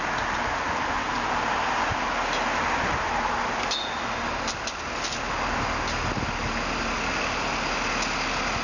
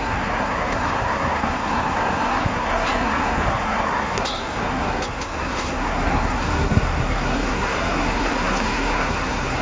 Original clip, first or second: first